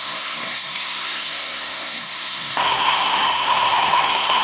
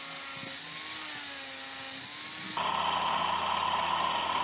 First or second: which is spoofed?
first